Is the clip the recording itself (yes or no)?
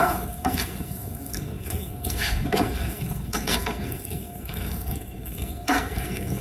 no